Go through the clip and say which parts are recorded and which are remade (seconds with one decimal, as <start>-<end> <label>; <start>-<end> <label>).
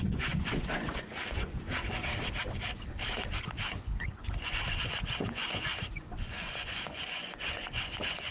0.0-2.0 remade; 2.0-3.8 recorded; 3.8-8.3 remade